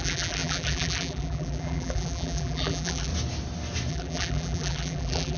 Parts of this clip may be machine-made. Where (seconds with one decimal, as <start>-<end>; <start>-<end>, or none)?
0.0-3.1; 3.9-5.4